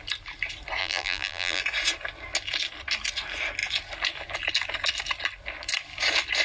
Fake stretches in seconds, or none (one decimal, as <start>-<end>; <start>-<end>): 0.8-1.6